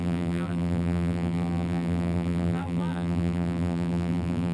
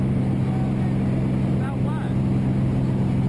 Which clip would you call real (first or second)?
second